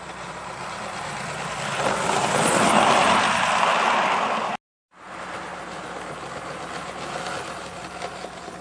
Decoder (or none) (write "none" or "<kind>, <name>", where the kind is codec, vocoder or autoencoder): none